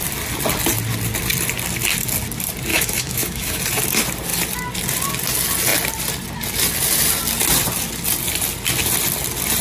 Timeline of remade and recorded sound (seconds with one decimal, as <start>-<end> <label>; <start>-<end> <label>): 0.0-2.7 recorded; 2.7-3.6 remade; 3.6-9.6 recorded